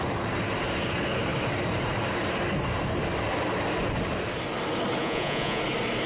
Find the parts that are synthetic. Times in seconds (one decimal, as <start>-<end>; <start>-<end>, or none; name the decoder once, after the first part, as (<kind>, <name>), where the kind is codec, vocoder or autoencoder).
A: 5.0-5.6 (vocoder, Vocos)